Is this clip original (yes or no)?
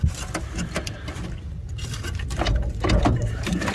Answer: yes